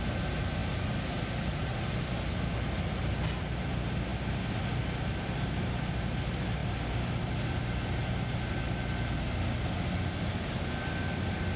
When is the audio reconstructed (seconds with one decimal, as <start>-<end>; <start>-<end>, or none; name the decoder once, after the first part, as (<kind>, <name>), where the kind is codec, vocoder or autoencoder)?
none